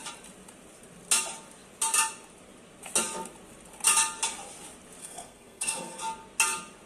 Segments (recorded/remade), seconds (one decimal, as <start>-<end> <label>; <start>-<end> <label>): 0.0-5.0 recorded; 5.0-6.0 remade; 6.0-6.9 recorded